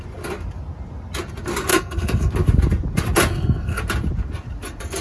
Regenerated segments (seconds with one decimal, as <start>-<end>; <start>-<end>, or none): 1.7-2.3; 3.3-3.8

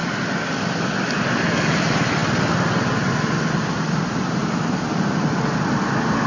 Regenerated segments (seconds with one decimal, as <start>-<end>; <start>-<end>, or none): none

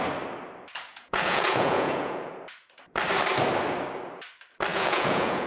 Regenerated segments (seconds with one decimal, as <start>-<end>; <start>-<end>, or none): 0.9-2.3; 4.7-5.5

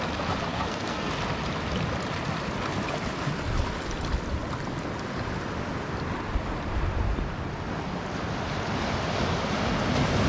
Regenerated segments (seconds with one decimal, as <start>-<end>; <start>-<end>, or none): 0.5-1.1

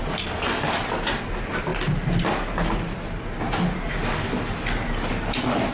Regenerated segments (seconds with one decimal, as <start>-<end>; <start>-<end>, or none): none